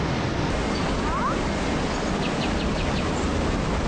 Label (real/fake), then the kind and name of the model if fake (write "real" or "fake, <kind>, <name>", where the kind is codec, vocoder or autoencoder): real